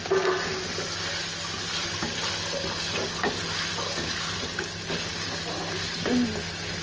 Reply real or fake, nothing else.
real